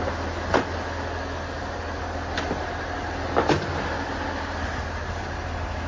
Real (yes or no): yes